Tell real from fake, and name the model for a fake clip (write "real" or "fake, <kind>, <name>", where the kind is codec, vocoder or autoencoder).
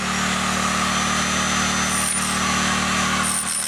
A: real